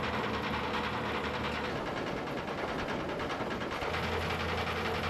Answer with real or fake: real